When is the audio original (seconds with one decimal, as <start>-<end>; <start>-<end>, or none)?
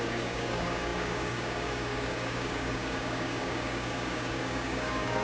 none